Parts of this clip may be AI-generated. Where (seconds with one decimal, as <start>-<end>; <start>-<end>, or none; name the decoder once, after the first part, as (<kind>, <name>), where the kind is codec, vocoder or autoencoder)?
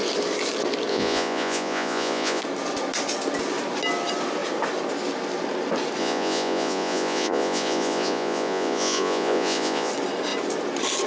0.9-2.4 (vocoder, Vocos); 6.0-9.9